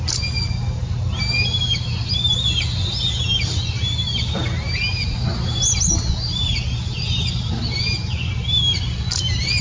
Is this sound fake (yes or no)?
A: no